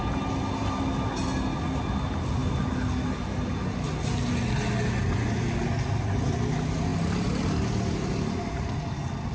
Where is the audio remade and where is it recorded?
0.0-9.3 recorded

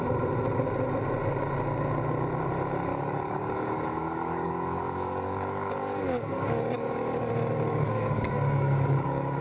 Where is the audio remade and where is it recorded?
0.0-2.9 recorded; 2.9-7.3 remade; 7.3-7.7 recorded; 7.7-9.4 remade